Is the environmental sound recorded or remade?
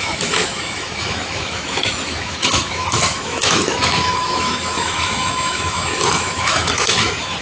remade